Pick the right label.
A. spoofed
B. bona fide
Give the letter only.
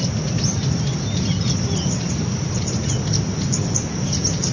B